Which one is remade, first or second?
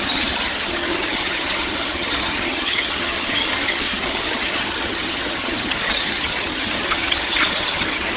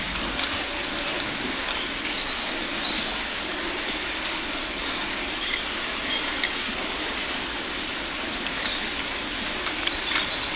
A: first